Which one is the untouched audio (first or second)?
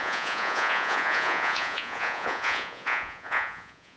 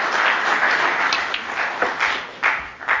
second